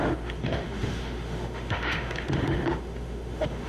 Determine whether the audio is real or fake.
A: fake